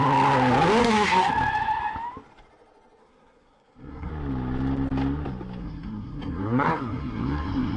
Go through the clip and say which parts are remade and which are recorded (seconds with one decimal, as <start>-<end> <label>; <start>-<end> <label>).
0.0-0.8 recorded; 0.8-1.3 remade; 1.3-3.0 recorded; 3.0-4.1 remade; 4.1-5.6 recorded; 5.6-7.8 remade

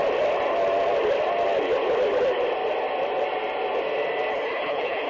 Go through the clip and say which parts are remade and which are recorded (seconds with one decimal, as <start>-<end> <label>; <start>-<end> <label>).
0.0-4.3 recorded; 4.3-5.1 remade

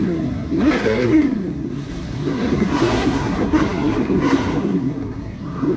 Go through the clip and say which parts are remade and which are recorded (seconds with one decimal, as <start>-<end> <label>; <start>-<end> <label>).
0.0-5.8 remade

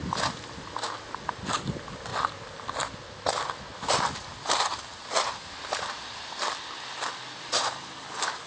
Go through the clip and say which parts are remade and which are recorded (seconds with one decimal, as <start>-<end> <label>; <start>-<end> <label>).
0.0-8.5 recorded

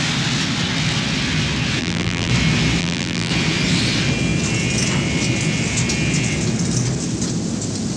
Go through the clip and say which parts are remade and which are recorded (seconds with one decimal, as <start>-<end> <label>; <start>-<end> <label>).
0.0-1.8 recorded; 1.8-2.3 remade; 2.3-2.8 recorded; 2.8-3.3 remade; 3.3-8.0 recorded